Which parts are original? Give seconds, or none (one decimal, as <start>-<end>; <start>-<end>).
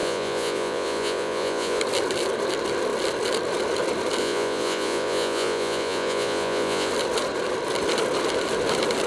1.8-4.2; 6.9-9.1